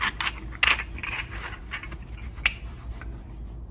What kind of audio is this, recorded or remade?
recorded